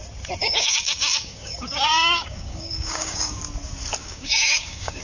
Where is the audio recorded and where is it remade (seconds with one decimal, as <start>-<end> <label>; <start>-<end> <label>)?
0.0-0.4 recorded; 0.4-3.4 remade; 3.4-4.0 recorded; 4.0-5.0 remade